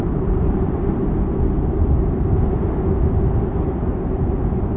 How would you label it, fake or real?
real